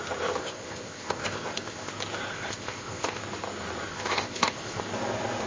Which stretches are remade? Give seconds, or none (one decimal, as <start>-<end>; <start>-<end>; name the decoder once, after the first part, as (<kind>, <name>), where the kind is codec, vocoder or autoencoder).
0.4-1.9 (codec, ZipCodec); 2.3-3.2; 3.9-4.8